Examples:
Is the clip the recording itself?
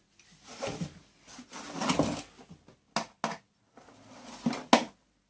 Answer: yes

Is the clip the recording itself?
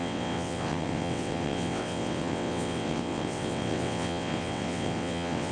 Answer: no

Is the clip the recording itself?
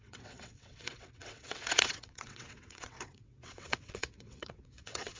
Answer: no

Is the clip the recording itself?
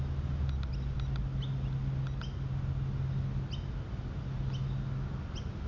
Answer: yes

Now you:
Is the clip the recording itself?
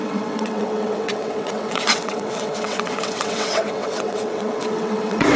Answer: no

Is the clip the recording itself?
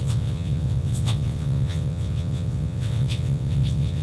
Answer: no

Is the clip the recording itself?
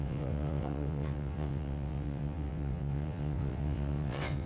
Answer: no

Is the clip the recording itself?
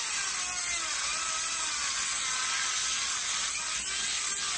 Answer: yes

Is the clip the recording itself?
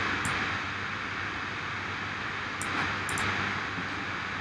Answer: yes